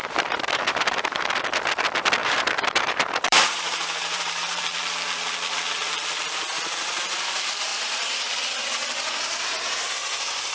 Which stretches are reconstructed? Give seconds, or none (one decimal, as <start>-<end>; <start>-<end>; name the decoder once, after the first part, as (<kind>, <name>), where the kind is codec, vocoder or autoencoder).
0.0-1.2 (vocoder, BigVGAN v2); 2.2-4.6; 7.7-8.2